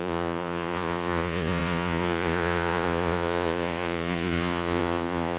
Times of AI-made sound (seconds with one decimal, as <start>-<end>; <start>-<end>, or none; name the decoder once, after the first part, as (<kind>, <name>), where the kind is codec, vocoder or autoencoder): 0.0-5.4 (vocoder, Vocos)